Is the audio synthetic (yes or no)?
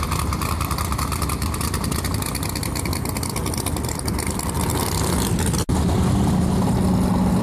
no